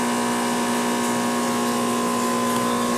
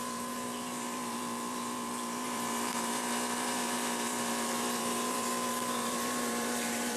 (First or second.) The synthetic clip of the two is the second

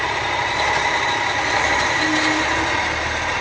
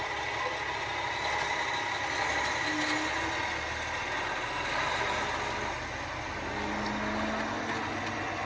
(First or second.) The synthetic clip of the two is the first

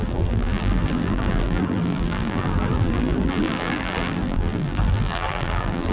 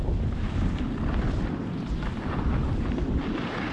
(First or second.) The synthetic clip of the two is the first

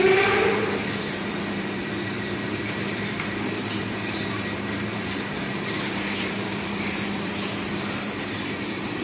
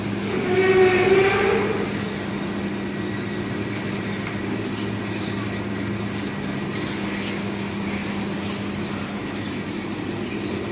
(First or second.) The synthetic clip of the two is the first